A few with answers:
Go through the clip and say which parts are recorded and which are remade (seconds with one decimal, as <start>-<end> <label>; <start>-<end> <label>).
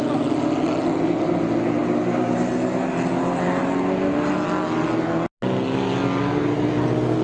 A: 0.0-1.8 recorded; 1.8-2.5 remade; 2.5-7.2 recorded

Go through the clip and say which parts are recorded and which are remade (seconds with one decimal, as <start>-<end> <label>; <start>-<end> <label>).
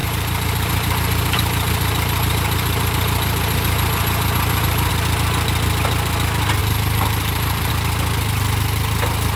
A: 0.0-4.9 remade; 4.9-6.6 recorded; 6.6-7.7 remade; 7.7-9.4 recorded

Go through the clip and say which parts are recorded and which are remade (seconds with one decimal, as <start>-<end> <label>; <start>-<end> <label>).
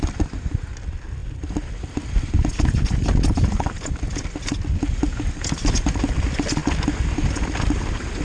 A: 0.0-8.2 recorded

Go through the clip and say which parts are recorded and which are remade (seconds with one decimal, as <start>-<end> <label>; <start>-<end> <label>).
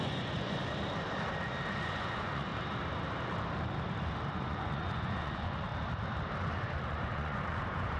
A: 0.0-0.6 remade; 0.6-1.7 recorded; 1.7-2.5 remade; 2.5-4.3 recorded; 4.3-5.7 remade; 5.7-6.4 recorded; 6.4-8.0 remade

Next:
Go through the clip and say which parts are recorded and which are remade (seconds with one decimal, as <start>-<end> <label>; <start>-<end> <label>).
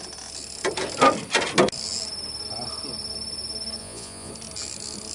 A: 0.0-3.8 recorded; 3.8-4.3 remade; 4.3-5.1 recorded